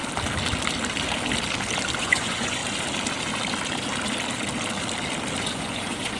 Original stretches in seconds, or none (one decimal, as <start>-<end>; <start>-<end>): 0.0-2.0; 2.6-5.4